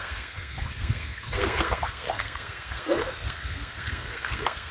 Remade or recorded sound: remade